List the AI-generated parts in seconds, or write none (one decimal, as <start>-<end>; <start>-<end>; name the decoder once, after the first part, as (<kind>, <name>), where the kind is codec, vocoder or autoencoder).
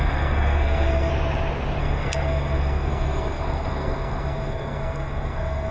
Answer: 0.0-1.1 (codec, SNAC); 1.8-5.7